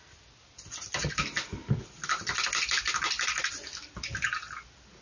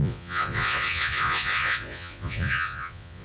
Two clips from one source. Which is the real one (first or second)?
first